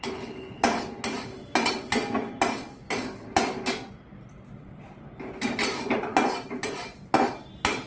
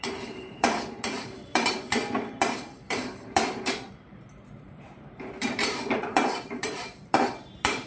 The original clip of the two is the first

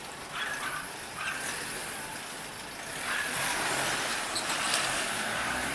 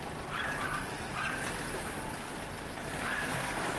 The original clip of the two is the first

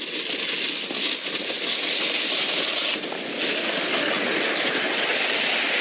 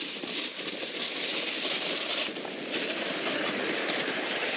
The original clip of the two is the first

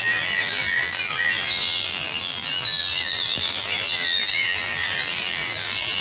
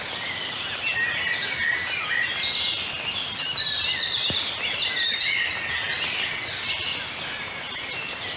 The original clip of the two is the second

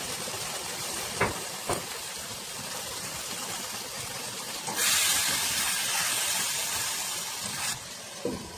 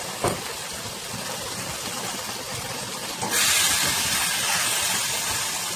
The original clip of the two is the second